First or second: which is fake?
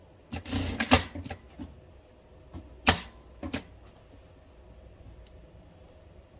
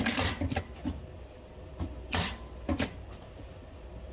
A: second